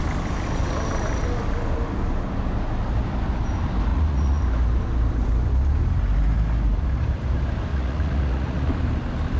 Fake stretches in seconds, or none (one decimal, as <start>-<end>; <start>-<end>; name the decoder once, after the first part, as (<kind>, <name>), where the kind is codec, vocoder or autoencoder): 3.9-4.4 (vocoder, Vocos); 7.7-8.7